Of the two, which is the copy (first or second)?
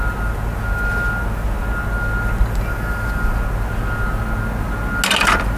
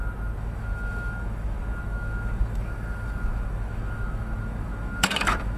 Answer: second